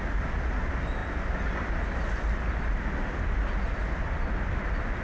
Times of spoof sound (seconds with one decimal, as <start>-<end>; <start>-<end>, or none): none